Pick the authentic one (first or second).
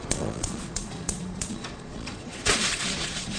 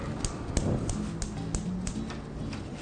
second